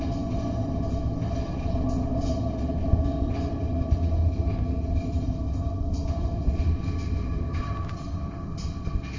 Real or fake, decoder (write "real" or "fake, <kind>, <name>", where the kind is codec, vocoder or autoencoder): real